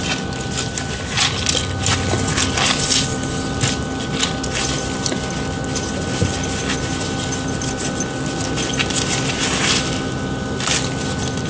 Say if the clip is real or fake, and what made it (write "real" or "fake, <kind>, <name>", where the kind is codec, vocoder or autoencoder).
real